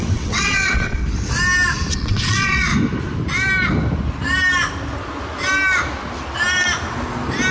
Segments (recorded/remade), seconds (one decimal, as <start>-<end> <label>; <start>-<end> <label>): 0.0-1.0 remade; 1.0-1.9 recorded; 1.9-2.7 remade; 2.7-7.5 recorded